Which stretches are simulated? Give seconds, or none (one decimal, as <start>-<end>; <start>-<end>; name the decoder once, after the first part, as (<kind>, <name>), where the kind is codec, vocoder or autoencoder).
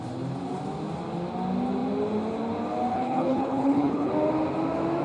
2.9-4.1 (codec, HILCodec)